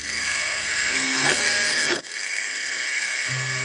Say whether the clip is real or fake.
fake